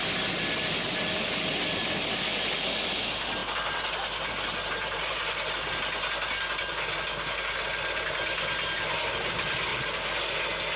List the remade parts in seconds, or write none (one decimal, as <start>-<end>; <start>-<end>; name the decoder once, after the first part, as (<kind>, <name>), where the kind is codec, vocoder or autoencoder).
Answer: none